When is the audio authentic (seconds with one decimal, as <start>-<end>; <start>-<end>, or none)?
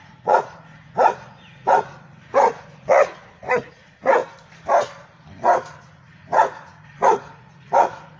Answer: 4.2-5.8